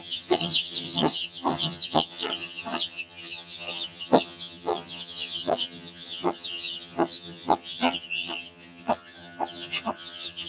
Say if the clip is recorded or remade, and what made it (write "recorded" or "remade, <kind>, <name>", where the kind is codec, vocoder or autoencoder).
remade, vocoder, HiFi-GAN